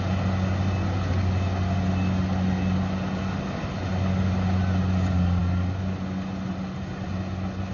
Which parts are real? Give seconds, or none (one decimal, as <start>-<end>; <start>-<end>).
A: 0.0-7.7